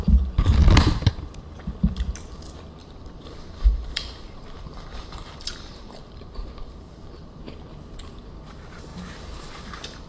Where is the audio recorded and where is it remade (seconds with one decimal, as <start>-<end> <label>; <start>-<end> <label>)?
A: 0.0-2.8 recorded; 2.8-7.4 remade; 7.4-10.1 recorded